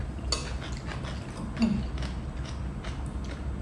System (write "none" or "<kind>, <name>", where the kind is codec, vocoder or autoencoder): none